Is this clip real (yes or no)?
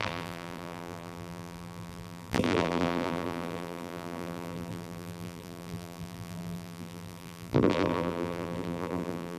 no